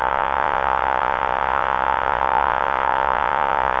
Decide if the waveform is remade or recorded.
remade